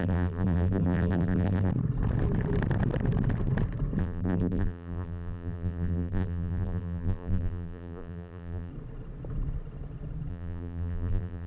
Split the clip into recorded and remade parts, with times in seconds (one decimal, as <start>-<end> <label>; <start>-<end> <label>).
0.0-1.7 remade; 1.7-4.0 recorded; 4.0-8.7 remade; 8.7-10.3 recorded; 10.3-11.5 remade